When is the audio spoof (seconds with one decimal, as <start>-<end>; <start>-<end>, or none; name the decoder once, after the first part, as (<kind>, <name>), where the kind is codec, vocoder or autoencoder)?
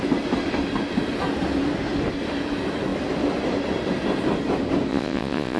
4.9-5.6 (vocoder, Vocos)